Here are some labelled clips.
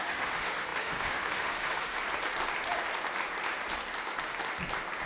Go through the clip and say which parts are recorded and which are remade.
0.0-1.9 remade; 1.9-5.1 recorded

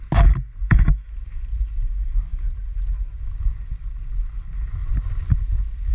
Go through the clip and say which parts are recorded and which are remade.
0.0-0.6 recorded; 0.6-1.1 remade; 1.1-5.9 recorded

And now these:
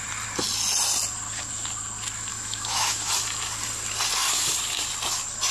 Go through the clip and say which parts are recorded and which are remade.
0.0-2.3 recorded; 2.3-3.1 remade; 3.1-5.5 recorded

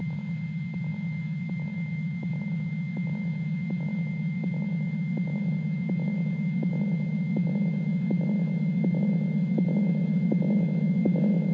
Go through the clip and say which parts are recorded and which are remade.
0.0-11.5 remade